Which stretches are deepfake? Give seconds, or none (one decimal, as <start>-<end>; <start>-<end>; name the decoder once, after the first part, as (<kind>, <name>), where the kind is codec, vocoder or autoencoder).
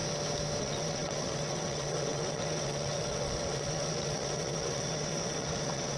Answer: 0.6-6.0 (vocoder, WaveNeXt)